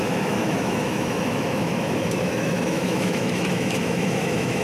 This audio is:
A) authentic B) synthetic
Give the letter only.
B